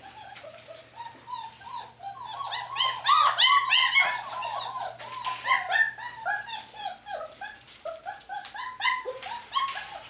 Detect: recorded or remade recorded